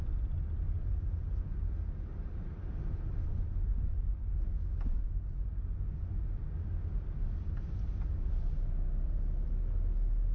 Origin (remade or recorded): recorded